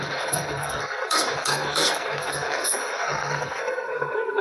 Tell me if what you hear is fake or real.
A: fake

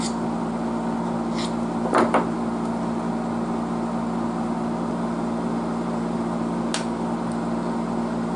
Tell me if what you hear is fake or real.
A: real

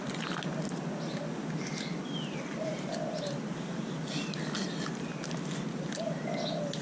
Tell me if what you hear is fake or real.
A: real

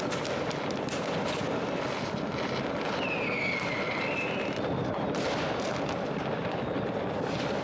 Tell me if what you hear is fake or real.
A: real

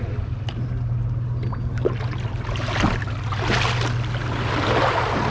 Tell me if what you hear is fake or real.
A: real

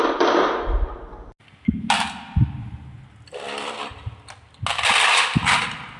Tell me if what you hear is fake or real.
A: real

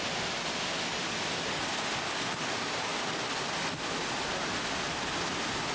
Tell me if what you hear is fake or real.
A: real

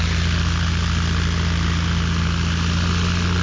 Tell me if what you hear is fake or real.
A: real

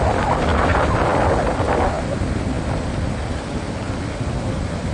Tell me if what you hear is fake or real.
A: real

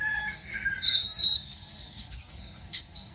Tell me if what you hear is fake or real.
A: fake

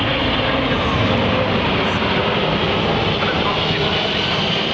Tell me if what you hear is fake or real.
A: real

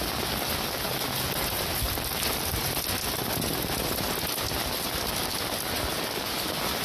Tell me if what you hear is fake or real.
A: real